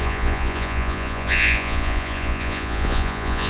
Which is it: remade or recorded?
remade